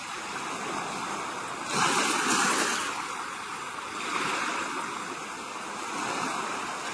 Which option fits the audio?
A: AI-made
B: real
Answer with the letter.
B